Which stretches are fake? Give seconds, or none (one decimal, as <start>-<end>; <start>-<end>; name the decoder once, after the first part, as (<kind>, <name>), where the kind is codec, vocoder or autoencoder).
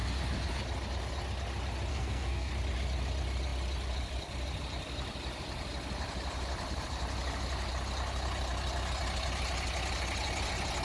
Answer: 1.9-2.5 (codec, SNAC)